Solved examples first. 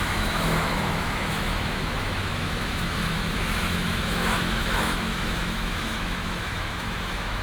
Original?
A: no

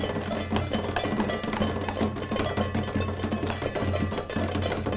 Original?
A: yes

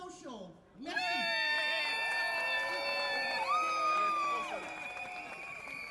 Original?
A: yes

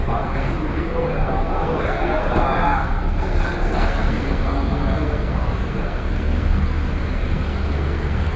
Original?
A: no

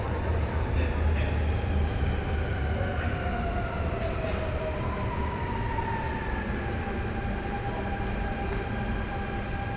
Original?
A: yes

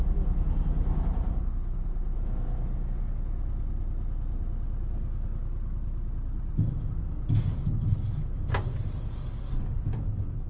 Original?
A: yes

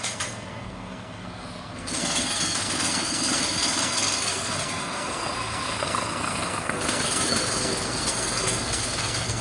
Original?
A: no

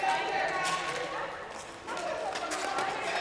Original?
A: yes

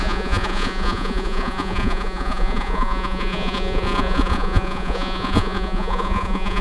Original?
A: no